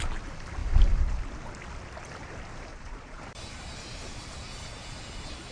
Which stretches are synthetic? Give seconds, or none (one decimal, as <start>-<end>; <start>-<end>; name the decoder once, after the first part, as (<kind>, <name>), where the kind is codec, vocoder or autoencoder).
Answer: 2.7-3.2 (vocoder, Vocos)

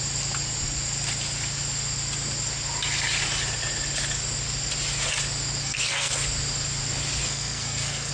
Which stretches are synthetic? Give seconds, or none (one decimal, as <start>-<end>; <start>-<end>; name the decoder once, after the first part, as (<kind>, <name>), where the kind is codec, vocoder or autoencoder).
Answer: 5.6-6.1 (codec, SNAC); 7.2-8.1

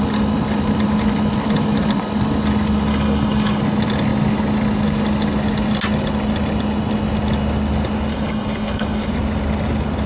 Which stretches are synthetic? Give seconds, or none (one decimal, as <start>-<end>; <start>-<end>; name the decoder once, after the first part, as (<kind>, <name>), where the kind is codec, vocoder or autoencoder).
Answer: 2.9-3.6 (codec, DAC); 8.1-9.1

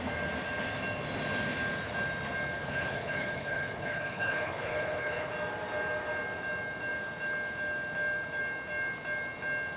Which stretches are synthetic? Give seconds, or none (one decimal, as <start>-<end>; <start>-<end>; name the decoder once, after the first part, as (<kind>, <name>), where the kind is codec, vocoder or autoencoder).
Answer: 2.6-5.3 (codec, HILCodec)

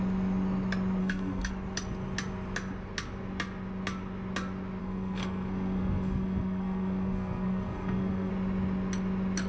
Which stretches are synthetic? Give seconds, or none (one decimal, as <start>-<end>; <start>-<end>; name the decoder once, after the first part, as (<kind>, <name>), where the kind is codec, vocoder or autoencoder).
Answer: 1.0-1.5 (codec, SNAC); 4.8-8.3

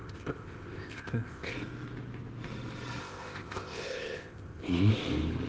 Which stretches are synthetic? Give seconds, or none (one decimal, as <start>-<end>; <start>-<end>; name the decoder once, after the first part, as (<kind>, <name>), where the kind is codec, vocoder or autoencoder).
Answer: 0.0-1.5 (codec, ZipCodec); 3.0-4.9

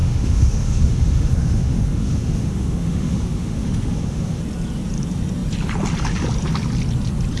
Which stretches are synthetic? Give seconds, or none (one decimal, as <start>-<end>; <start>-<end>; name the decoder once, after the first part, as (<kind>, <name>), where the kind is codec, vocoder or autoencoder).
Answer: 0.0-4.4 (autoencoder, DAC-VAE)